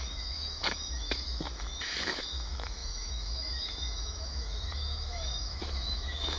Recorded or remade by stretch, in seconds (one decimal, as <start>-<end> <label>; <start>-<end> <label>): 0.0-6.4 remade